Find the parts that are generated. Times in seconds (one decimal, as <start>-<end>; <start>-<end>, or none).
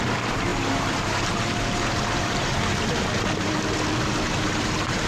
0.5-3.6